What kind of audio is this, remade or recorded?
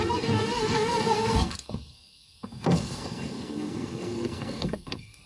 remade